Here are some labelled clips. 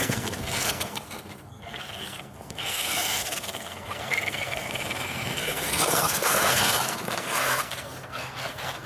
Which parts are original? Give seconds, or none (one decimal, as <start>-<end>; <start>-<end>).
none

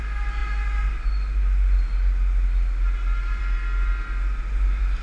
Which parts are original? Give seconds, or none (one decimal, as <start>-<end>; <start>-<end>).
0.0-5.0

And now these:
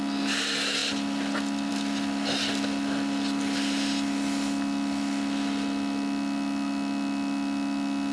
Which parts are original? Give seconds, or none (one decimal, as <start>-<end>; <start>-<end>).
0.0-8.1

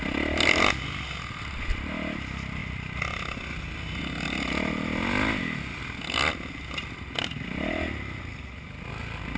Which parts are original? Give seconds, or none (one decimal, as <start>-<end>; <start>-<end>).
0.0-9.4